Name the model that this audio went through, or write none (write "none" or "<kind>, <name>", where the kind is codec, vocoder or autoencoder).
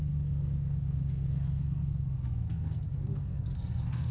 codec, SNAC